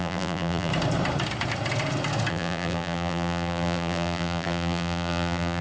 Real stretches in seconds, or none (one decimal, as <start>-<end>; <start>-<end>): 0.7-2.3